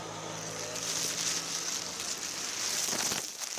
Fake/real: real